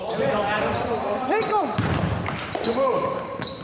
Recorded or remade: remade